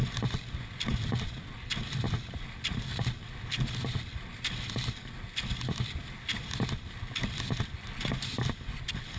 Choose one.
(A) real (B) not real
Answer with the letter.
A